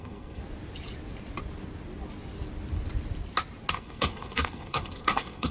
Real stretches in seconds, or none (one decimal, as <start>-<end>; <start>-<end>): 0.4-3.7